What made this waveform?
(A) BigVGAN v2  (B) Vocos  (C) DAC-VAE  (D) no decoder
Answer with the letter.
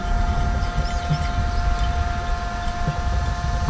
D